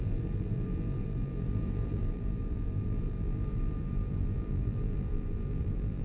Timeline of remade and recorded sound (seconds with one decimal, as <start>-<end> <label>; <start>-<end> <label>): 0.0-6.0 remade